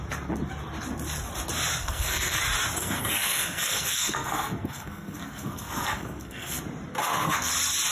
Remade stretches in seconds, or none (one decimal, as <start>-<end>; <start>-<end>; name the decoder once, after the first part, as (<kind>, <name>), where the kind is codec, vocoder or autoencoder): 1.8-2.4 (codec, SNAC); 2.8-6.6; 7.0-7.5